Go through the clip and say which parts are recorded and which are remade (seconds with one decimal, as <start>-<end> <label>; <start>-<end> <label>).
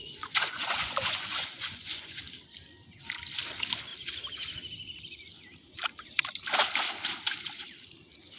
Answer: 0.0-2.2 remade; 2.2-8.4 recorded